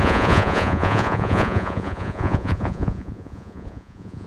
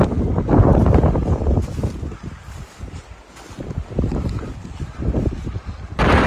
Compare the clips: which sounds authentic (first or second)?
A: second